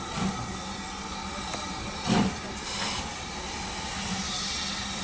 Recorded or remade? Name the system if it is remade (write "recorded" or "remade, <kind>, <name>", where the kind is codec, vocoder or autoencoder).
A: recorded